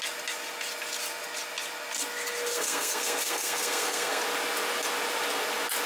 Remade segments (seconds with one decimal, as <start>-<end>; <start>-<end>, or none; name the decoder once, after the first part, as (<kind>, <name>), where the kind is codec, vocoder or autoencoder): 2.5-4.2 (codec, SNAC)